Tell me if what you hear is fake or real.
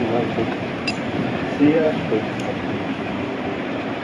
fake